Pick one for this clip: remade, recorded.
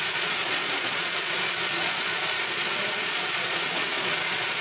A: remade